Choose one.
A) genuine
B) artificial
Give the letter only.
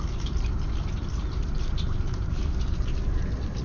A